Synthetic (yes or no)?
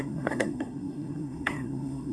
yes